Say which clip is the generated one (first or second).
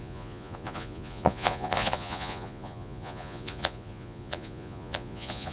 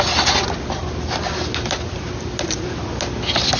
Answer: first